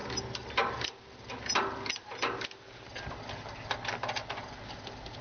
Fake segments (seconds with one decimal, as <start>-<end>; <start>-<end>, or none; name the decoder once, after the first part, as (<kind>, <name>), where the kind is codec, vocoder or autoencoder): none

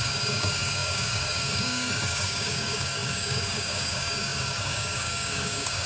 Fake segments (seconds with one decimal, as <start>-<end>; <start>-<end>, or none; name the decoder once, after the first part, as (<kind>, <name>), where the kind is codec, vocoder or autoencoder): 0.0-5.9 (codec, DAC)

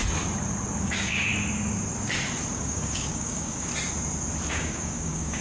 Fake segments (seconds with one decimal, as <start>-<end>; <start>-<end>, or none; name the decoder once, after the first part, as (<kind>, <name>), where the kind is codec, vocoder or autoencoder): 0.8-1.3 (codec, DAC); 2.5-3.7; 4.5-5.4

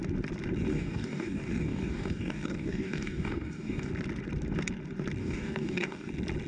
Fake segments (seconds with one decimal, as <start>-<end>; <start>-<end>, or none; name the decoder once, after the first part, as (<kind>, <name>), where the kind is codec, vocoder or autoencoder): 0.7-3.9 (codec, DAC); 5.2-6.1

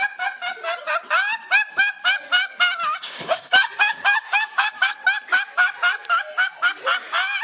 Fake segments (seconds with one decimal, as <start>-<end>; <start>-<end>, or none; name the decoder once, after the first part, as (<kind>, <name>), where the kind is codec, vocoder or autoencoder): 2.9-4.9 (codec, DAC)